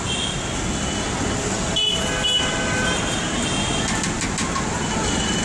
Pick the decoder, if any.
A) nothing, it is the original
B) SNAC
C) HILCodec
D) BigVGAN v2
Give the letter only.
A